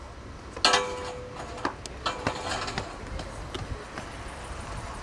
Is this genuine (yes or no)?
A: yes